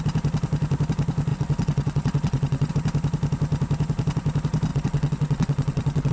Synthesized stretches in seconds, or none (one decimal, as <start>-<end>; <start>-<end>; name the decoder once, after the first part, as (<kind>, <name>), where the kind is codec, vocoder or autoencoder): 1.3-2.7 (vocoder, WaveNeXt); 4.7-6.1